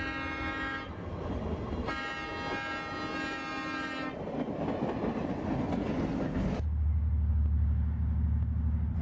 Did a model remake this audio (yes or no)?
no